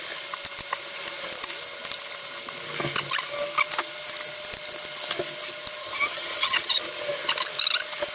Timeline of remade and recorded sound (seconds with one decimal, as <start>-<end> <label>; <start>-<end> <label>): 0.0-5.8 recorded; 5.8-6.8 remade; 6.8-8.1 recorded